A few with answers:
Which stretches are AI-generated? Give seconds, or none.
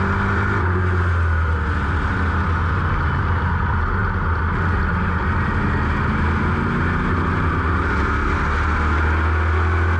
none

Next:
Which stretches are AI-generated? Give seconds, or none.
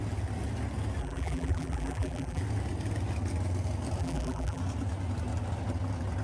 1.0-2.4 (vocoder, BigVGAN v2); 4.0-4.6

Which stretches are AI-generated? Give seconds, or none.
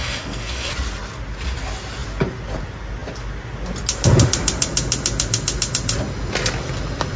0.0-0.7 (codec, SNAC)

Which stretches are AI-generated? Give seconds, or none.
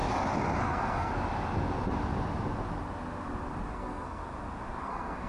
0.6-1.1 (codec, SNAC); 3.7-4.2; 4.8-5.3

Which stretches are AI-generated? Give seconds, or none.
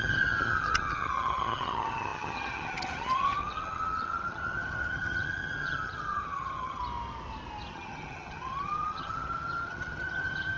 0.0-6.8 (vocoder, HiFi-GAN); 7.7-10.6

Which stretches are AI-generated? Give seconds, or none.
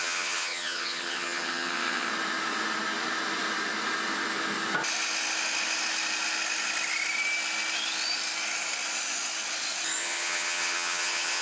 0.0-2.1 (vocoder, HiFi-GAN); 10.0-11.4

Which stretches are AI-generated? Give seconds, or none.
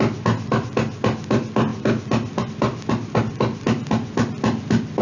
none